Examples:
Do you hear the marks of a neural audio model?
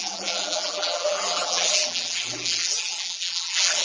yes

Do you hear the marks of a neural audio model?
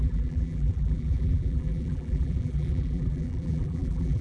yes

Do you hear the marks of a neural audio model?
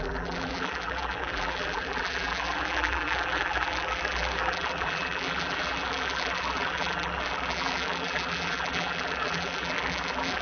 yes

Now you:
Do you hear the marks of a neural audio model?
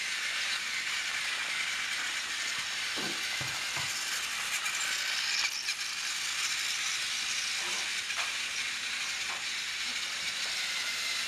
no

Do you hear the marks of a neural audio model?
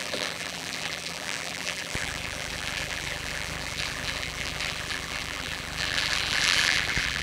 yes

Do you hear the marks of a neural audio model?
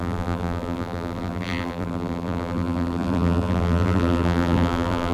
yes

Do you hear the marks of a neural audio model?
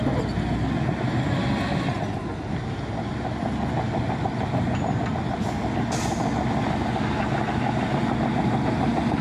no